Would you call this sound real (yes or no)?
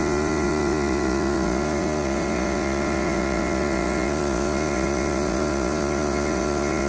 no